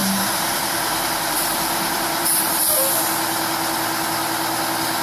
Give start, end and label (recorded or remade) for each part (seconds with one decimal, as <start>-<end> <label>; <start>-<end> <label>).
0.0-3.0 remade; 3.0-5.0 recorded